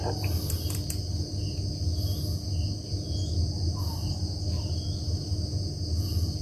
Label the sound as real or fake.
real